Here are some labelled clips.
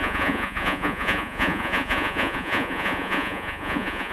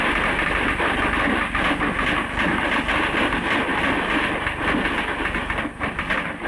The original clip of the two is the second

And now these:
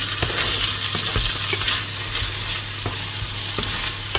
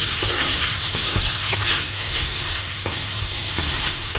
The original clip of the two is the first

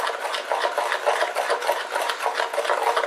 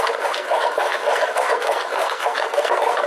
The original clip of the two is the first